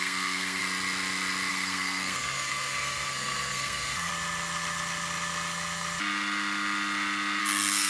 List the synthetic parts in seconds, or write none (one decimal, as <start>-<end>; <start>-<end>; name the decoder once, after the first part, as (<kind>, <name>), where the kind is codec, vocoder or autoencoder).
0.0-0.6 (codec, SNAC); 1.5-4.1; 7.4-7.9